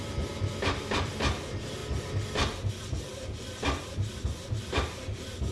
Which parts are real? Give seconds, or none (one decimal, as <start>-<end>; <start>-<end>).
1.8-2.7